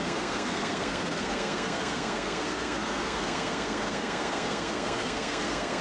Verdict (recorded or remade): remade